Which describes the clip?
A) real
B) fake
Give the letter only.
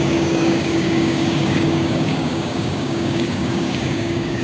B